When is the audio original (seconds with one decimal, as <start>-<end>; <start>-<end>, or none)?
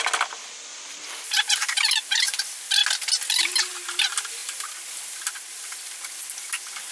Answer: 0.0-6.9